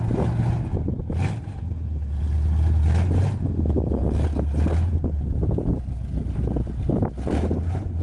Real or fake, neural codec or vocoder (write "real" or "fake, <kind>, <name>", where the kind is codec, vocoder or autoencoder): real